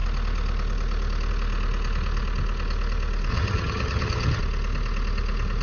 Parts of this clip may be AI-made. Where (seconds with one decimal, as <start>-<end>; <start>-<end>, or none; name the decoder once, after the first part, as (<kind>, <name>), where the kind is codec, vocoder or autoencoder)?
3.3-4.4 (vocoder, HiFi-GAN)